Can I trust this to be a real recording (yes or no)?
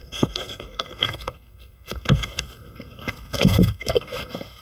no